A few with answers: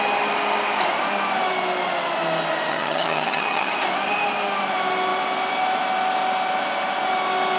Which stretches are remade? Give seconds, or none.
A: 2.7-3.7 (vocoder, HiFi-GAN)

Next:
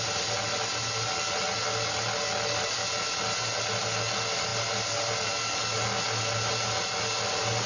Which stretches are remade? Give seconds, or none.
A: none